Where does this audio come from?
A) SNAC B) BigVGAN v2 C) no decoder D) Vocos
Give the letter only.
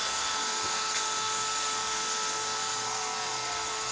A